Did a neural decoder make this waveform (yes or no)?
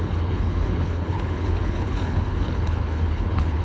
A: yes